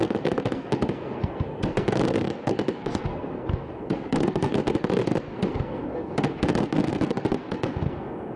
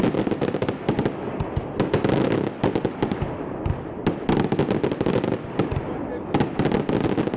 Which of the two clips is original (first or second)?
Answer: second